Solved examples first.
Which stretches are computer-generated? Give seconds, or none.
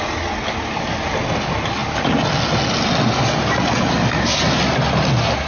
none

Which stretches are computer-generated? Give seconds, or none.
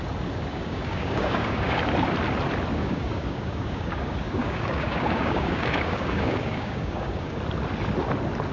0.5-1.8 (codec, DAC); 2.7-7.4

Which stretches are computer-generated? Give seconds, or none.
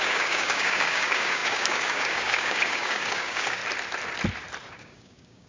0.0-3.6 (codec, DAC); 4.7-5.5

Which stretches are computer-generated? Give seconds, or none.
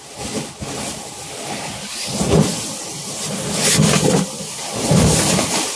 none